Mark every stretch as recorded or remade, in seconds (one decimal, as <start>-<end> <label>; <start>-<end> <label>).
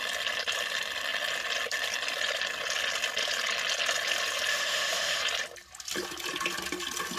0.0-4.5 recorded; 4.5-5.2 remade; 5.2-7.2 recorded